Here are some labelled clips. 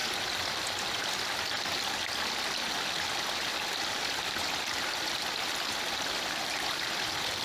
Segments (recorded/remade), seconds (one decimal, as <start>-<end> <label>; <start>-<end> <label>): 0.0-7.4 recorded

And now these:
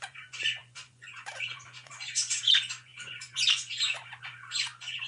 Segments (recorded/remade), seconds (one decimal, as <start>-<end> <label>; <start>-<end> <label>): 0.0-5.1 remade

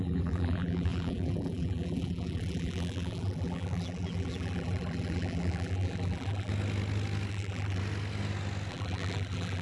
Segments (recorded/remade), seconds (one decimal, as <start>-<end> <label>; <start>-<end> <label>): 0.0-6.5 remade; 6.5-7.3 recorded; 7.3-7.8 remade; 7.8-8.7 recorded; 8.7-9.6 remade